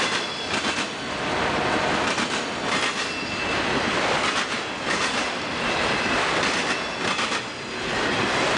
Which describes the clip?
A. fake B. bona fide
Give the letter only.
B